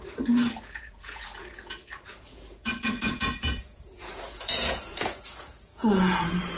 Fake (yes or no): yes